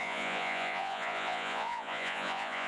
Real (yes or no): no